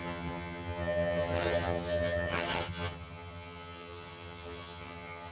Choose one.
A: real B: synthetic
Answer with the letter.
B